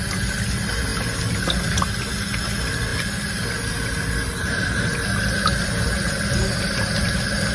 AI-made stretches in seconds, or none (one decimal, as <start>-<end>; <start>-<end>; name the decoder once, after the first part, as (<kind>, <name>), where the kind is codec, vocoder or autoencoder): none